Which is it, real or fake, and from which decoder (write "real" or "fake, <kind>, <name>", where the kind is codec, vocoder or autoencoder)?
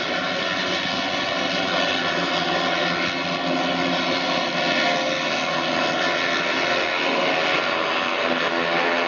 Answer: real